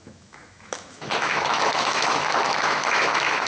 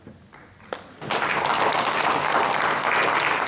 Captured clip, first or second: second